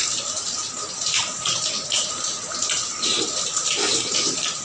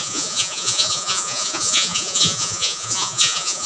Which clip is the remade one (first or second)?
second